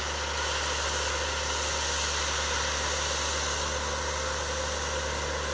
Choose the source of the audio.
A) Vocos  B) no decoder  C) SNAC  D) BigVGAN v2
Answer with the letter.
B